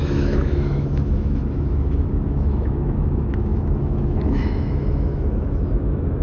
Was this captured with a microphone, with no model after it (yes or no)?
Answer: no